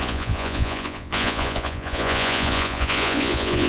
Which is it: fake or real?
fake